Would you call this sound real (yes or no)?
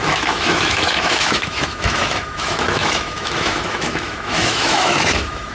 no